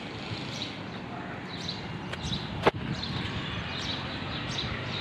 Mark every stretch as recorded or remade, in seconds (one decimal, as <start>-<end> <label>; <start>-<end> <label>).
0.0-5.0 recorded